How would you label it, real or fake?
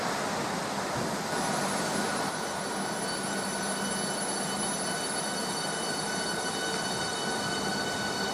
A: real